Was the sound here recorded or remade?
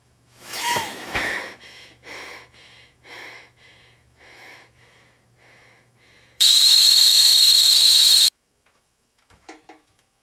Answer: remade